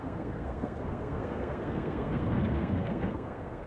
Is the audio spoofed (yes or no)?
yes